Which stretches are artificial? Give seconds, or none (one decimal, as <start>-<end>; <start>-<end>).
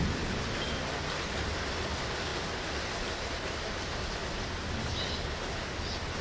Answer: none